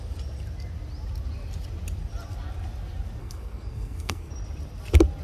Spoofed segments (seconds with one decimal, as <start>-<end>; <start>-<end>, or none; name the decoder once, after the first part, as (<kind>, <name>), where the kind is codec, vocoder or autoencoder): 3.2-4.3 (codec, SNAC)